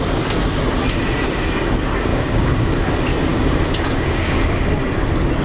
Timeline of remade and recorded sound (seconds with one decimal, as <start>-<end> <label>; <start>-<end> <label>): 0.0-2.1 recorded; 2.1-2.7 remade; 2.7-3.3 recorded; 3.3-4.6 remade; 4.6-5.4 recorded